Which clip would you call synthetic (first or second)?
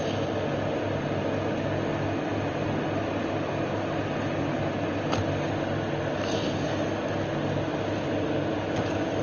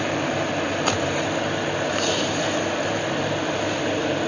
second